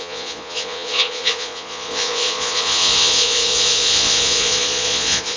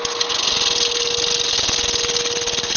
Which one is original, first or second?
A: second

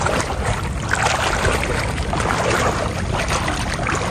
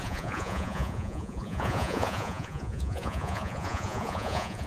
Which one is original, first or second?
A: first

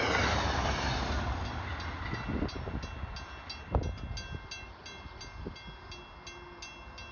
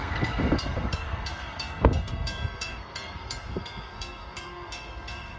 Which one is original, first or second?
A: first